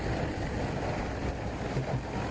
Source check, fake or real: real